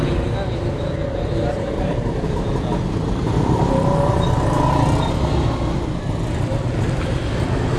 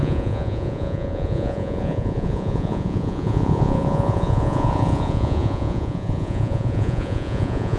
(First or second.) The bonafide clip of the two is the first